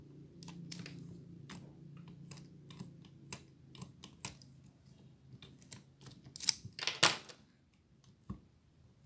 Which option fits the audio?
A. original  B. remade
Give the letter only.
A